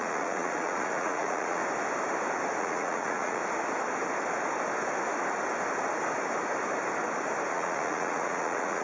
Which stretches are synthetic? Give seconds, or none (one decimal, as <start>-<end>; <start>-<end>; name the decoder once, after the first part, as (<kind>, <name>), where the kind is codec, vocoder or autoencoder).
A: 0.0-1.6 (vocoder, Vocos); 2.6-3.4; 7.5-8.8